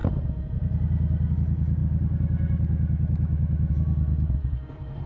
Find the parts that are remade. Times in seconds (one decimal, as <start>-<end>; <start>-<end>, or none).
none